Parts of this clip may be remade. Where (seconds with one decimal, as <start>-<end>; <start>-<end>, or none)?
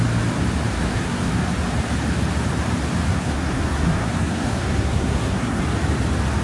0.8-1.3; 3.1-5.6